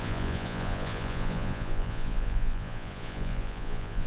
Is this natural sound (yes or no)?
no